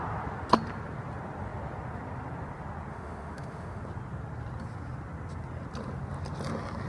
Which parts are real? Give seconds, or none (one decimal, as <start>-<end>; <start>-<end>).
0.0-2.9; 3.8-6.9